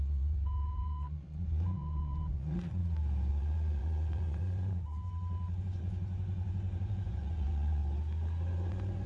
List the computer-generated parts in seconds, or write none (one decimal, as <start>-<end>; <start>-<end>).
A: 0.0-2.8; 3.3-5.0; 5.6-7.8; 8.7-9.1